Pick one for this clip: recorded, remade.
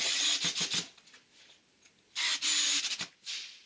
recorded